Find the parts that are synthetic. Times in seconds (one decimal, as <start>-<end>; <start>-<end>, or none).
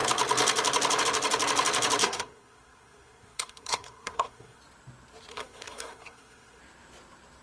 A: 2.0-4.6; 5.3-6.6